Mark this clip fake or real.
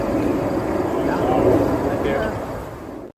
real